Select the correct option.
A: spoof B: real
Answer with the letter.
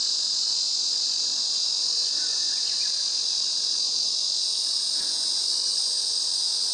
A